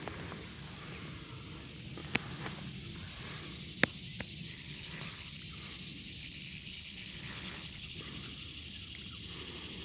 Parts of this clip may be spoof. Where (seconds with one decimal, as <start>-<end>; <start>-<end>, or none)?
4.5-5.4; 6.2-8.0